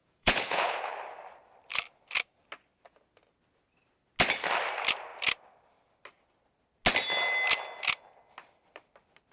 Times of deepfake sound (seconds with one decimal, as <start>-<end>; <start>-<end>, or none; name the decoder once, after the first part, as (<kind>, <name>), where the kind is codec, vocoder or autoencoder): 0.0-0.8 (vocoder, Vocos)